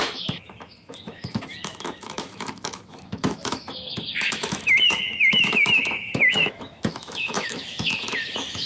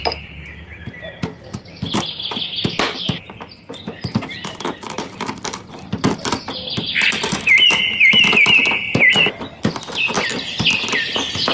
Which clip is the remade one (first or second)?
first